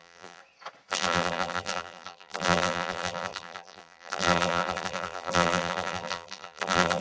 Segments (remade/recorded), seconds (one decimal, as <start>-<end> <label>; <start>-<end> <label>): 0.0-0.4 remade; 0.4-0.9 recorded; 0.9-7.0 remade